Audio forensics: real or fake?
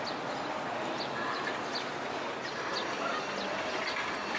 real